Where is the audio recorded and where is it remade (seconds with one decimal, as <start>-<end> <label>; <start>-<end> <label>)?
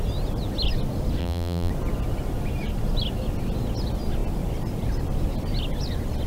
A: 0.0-1.2 recorded; 1.2-1.7 remade; 1.7-6.3 recorded